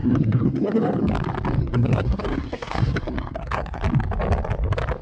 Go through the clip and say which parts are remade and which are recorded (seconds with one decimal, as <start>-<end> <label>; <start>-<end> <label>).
0.0-1.0 remade; 1.0-1.6 recorded; 1.6-3.8 remade; 3.8-5.0 recorded